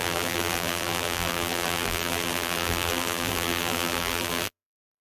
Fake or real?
fake